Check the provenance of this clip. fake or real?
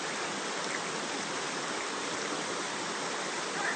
real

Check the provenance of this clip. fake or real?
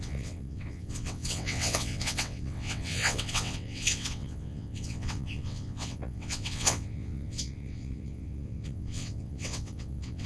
fake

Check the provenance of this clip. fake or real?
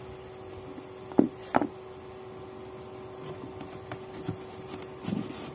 real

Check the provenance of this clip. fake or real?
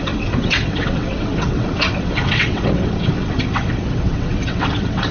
fake